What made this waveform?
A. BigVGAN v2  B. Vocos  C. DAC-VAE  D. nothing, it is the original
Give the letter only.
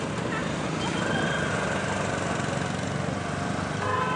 D